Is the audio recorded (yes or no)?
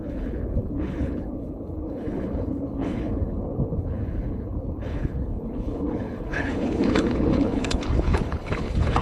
no